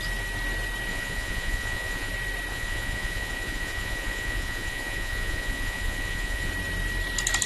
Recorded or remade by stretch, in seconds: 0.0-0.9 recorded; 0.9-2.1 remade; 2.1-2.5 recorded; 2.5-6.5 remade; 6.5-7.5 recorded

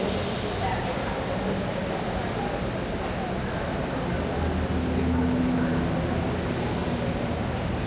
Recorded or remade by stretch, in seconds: 0.0-7.9 recorded

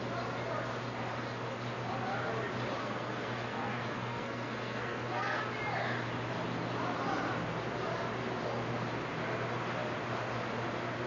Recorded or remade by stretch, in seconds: 0.0-2.8 recorded; 2.8-5.4 remade; 5.4-11.1 recorded

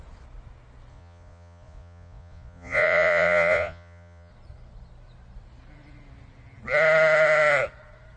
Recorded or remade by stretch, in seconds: 0.0-0.9 recorded; 0.9-4.3 remade; 4.3-8.2 recorded